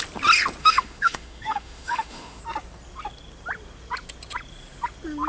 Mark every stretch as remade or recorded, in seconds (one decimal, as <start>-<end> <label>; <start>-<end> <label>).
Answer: 0.0-0.6 recorded; 0.6-2.4 remade; 2.4-5.3 recorded